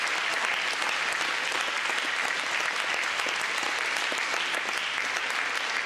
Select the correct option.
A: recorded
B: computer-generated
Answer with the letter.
A